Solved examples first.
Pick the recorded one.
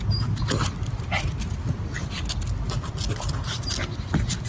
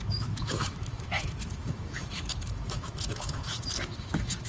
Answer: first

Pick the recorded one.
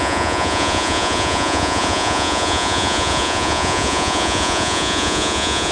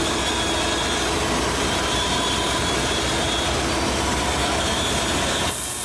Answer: second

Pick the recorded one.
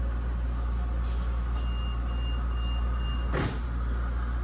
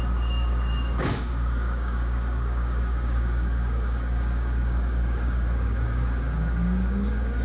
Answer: first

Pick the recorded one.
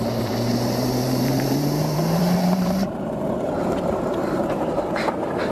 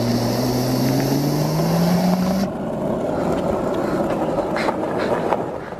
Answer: second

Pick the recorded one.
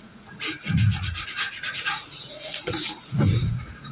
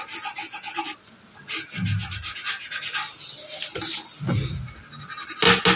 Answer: second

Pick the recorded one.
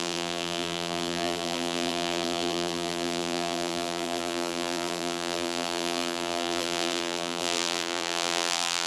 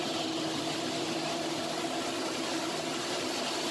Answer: second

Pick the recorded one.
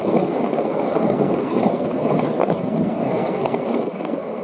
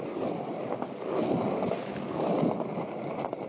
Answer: second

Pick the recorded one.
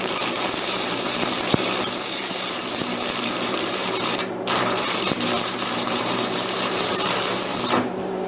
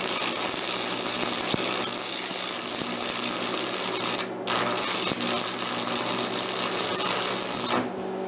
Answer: second